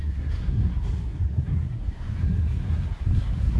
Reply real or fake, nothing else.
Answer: fake